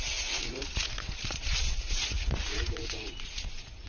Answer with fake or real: fake